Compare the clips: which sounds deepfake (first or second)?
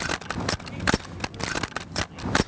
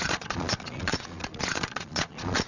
second